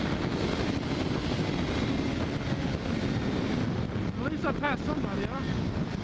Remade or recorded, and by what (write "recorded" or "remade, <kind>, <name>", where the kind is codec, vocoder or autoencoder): recorded